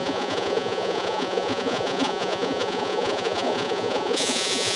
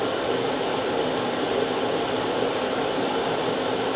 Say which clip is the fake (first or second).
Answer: first